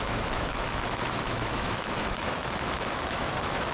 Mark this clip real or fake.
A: fake